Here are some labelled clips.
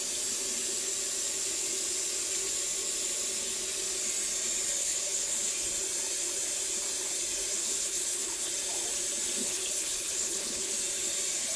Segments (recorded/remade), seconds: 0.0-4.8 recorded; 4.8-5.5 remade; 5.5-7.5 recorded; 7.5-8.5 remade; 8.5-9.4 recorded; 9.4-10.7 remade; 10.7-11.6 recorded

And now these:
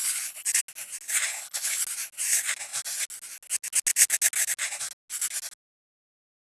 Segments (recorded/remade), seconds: 0.0-0.6 remade; 0.6-1.3 recorded; 1.3-1.8 remade; 1.8-6.6 recorded

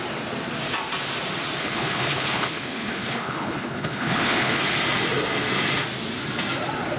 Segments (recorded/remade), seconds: 0.0-1.6 recorded; 1.6-4.6 remade; 4.6-7.0 recorded

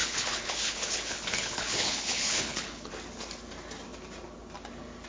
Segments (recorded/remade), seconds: 0.0-2.9 remade; 2.9-5.1 recorded

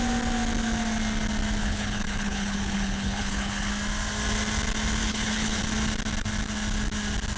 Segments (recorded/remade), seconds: 0.0-1.6 recorded; 1.6-3.7 remade; 3.7-5.0 recorded; 5.0-5.6 remade; 5.6-7.4 recorded